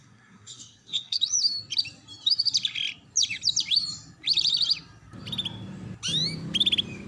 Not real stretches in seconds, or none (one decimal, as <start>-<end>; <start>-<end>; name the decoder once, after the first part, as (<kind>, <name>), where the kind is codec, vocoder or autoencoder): 0.0-1.2 (codec, SNAC)